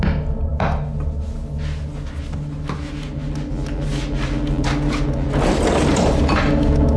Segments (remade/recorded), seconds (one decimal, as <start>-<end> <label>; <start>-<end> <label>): 0.0-7.0 recorded